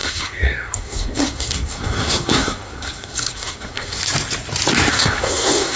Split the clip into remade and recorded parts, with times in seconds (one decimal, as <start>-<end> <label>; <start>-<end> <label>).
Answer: 0.0-4.0 remade; 4.0-4.9 recorded; 4.9-5.8 remade